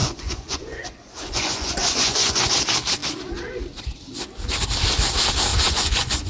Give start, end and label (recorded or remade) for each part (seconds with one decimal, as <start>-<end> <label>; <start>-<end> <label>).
0.0-2.5 remade; 2.5-5.5 recorded; 5.5-6.3 remade